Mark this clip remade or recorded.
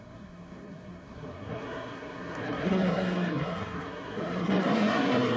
remade